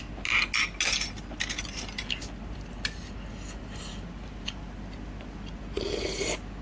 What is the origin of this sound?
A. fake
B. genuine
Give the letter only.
B